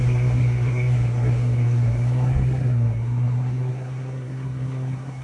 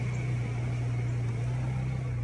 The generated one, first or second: first